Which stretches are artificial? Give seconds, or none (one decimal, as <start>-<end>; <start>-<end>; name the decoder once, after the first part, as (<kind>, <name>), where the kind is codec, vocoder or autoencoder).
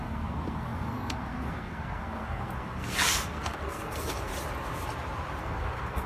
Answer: 0.0-4.3 (codec, SNAC); 5.4-6.1